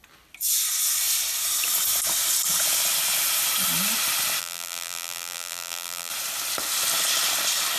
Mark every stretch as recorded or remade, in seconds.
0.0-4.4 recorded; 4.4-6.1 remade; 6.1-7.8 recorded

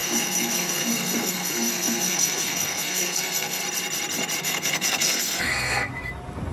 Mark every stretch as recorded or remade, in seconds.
0.0-3.6 remade; 3.6-4.4 recorded; 4.4-5.9 remade; 5.9-6.5 recorded